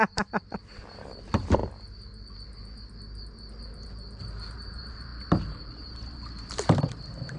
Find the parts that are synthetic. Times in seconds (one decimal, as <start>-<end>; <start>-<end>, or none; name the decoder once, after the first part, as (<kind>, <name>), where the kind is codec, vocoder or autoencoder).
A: 0.0-1.6 (vocoder, BigVGAN v2); 4.2-7.4